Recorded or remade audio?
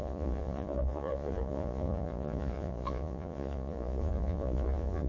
remade